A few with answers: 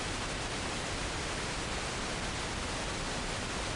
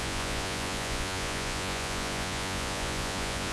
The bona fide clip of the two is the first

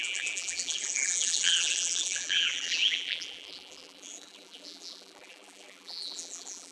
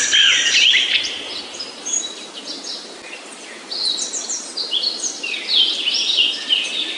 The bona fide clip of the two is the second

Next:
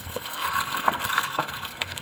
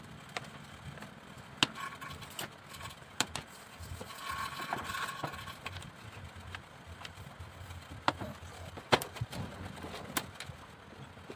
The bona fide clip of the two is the second